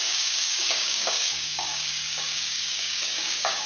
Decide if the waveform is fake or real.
fake